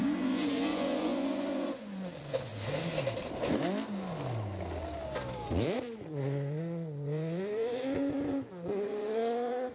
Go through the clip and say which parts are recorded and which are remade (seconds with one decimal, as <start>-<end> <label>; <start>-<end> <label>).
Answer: 0.0-2.5 remade; 2.5-5.5 recorded; 5.5-9.7 remade